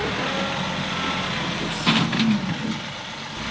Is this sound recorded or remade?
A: recorded